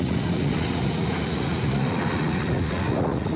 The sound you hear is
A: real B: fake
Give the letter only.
B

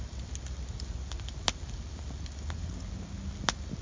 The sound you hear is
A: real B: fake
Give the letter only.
A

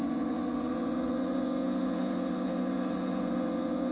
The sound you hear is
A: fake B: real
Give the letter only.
A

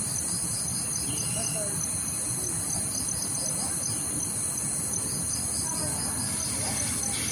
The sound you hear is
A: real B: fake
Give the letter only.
A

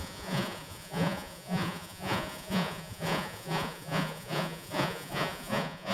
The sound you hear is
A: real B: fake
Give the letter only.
B